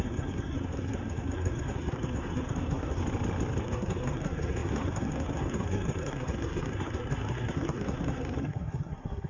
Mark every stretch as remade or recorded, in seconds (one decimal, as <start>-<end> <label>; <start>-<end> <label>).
0.0-3.0 remade; 3.0-3.6 recorded; 3.6-9.3 remade